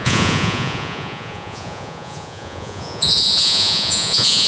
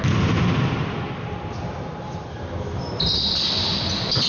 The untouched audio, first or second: second